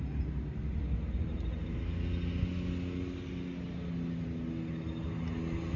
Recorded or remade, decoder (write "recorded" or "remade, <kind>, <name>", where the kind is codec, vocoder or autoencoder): recorded